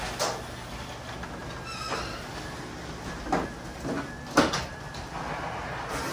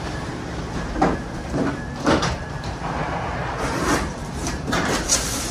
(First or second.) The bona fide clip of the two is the first